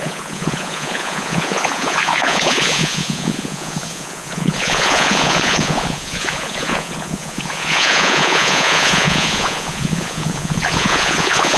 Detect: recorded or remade remade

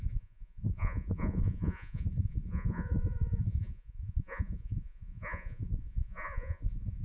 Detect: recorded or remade remade